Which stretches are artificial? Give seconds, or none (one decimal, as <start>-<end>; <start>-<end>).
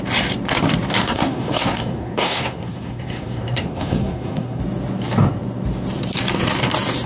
1.0-4.6